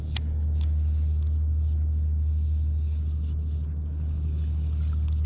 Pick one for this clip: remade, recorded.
recorded